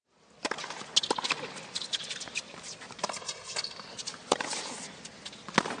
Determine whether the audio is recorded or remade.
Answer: recorded